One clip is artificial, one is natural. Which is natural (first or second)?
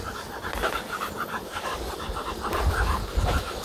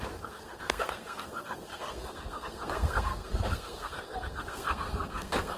first